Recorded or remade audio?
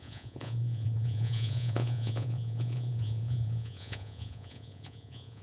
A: remade